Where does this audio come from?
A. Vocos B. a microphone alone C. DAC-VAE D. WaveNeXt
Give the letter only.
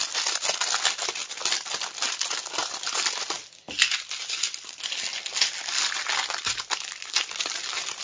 B